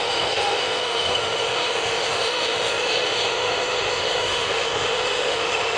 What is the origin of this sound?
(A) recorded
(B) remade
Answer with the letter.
B